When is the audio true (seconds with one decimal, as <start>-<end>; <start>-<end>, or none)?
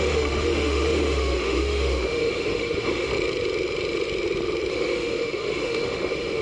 3.1-4.7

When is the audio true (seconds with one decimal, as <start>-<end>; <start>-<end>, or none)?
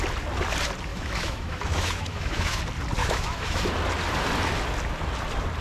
0.0-0.9; 2.6-3.0; 3.6-5.6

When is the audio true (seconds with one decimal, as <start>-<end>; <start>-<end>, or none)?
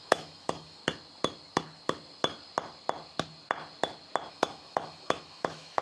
0.8-4.3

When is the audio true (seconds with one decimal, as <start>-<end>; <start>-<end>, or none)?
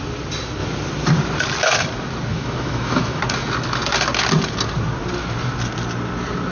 0.0-2.3; 3.2-6.5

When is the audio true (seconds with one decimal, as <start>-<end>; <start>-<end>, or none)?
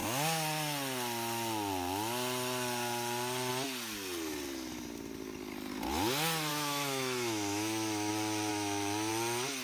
0.0-6.5; 8.1-8.5; 9.1-9.6